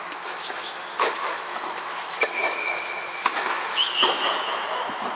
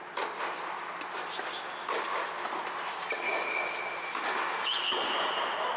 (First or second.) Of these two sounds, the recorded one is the second